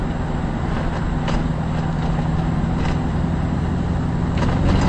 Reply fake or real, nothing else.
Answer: real